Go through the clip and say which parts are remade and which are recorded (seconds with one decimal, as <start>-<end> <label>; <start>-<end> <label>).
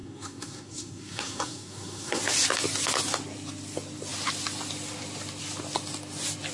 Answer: 0.0-2.2 remade; 2.2-6.5 recorded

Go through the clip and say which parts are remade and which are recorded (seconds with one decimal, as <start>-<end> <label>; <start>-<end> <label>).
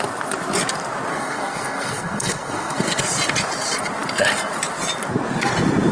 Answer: 0.0-1.1 recorded; 1.1-3.0 remade; 3.0-5.9 recorded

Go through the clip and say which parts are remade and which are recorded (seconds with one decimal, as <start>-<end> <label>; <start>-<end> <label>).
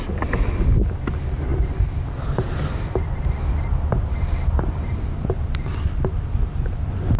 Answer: 0.0-7.2 recorded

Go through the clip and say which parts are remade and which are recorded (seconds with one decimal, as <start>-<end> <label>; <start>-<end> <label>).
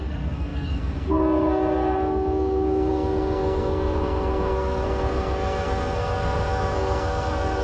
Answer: 0.0-7.6 remade